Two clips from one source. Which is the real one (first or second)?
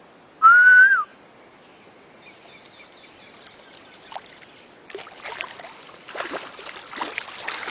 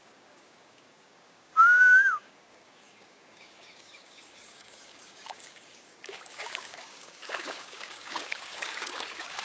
first